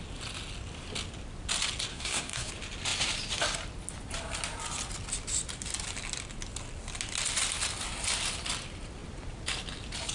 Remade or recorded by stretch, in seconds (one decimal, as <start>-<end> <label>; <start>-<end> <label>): 0.0-1.9 recorded; 1.9-2.5 remade; 2.5-10.1 recorded